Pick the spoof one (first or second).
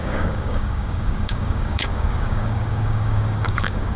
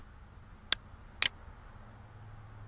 first